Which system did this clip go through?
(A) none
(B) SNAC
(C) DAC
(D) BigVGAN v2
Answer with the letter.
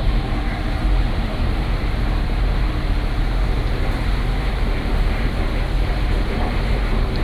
D